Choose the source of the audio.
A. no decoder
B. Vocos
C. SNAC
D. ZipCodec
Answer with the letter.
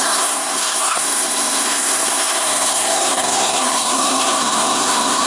C